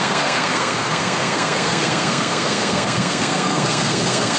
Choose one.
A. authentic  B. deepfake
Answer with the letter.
B